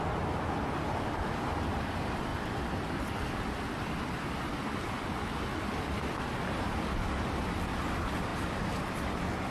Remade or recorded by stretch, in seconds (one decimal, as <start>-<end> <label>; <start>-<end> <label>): 0.0-9.5 recorded